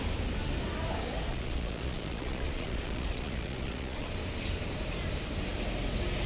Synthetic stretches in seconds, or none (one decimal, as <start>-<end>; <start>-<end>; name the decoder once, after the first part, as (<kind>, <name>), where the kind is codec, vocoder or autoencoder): 1.3-4.1 (vocoder, Vocos)